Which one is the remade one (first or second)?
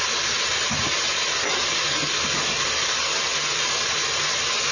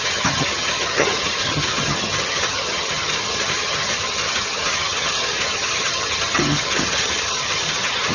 second